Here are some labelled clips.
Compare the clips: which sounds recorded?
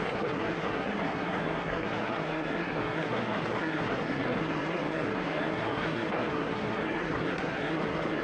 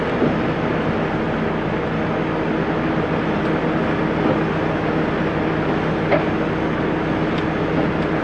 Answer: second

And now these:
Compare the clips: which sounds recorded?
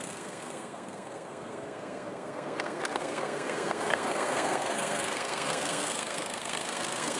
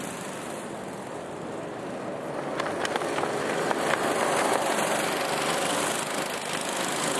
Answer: second